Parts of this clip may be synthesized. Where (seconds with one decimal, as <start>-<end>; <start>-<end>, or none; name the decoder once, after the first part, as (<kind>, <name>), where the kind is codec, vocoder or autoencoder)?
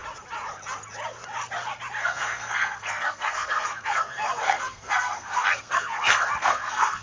2.0-7.0 (codec, SNAC)